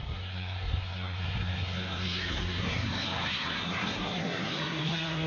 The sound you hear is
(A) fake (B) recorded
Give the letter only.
A